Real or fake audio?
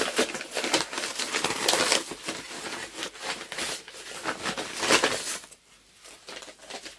real